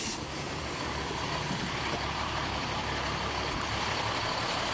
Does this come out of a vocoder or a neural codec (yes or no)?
yes